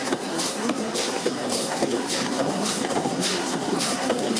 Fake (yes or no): yes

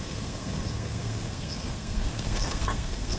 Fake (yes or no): yes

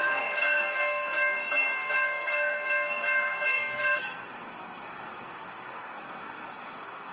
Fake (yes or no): yes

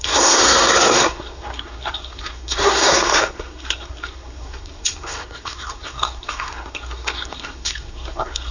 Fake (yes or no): yes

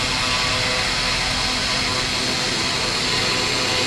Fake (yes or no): no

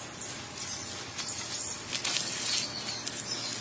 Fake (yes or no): no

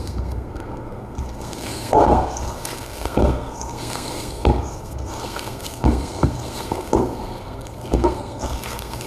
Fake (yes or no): yes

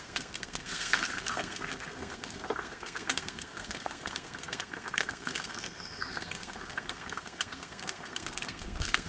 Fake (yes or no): yes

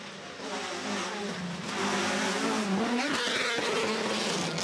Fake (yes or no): no